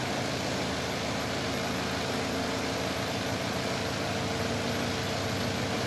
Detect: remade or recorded recorded